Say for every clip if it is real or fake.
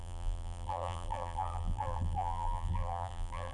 fake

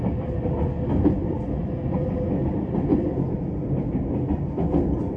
real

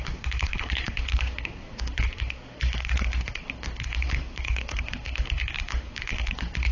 fake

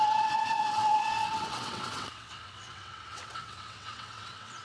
fake